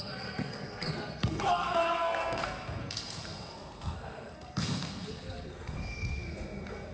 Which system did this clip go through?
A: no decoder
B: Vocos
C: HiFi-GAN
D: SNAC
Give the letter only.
D